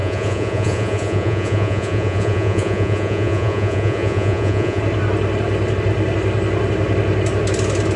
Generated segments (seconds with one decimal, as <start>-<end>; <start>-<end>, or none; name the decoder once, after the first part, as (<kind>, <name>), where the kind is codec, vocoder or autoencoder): 0.0-4.8 (vocoder, Vocos)